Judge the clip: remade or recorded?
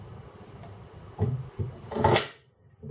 recorded